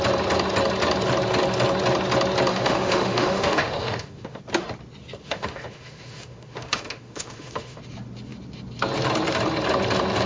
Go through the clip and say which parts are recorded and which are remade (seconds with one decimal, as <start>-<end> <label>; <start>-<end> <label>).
0.0-2.5 recorded; 2.5-4.4 remade; 4.4-5.2 recorded; 5.2-7.8 remade; 7.8-10.3 recorded